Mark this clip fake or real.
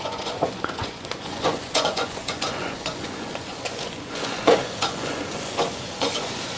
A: fake